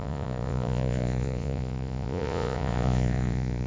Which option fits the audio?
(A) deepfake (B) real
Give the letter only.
A